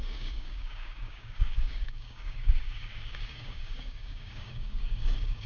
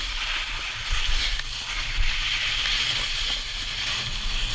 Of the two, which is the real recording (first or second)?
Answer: second